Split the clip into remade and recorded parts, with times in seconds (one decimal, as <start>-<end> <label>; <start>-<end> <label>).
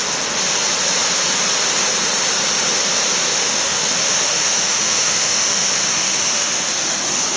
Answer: 0.0-3.3 recorded; 3.3-6.7 remade; 6.7-7.4 recorded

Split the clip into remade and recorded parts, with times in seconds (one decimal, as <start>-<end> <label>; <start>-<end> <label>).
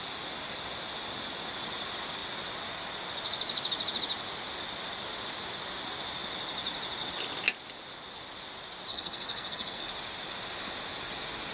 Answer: 0.0-8.9 recorded; 8.9-9.9 remade; 9.9-11.5 recorded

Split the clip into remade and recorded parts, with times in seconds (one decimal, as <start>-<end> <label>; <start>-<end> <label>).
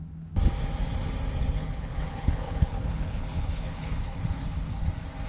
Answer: 0.0-1.6 recorded; 1.6-4.8 remade; 4.8-5.3 recorded